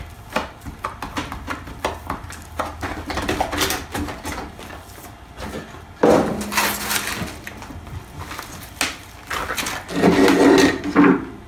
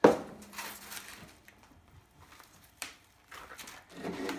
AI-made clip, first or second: second